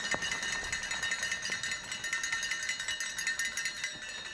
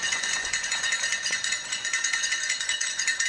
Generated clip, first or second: second